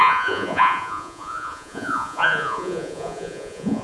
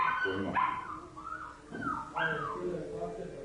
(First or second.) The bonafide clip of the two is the second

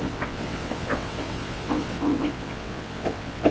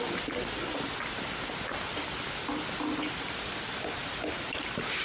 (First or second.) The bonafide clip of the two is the second